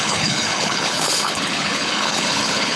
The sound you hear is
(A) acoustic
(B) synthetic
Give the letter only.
B